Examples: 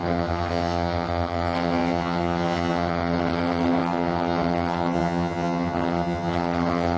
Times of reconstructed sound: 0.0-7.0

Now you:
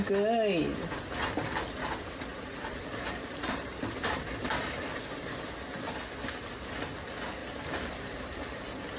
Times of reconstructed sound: 2.3-3.6; 7.4-8.6

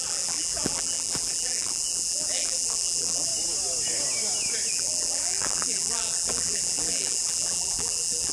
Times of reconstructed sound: 0.0-3.3; 4.7-8.3

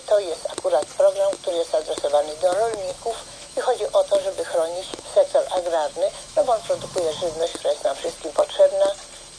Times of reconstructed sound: 2.9-3.8; 4.2-7.1

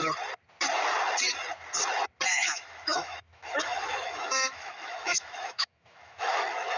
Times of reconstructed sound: 2.3-6.8

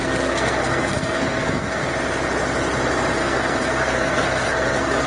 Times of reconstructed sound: 0.0-1.9; 3.2-5.1

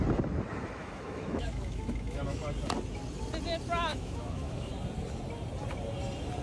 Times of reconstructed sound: 0.8-2.4; 3.9-4.7

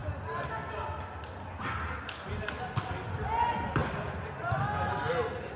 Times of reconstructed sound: none